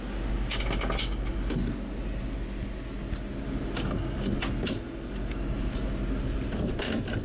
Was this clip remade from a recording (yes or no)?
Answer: no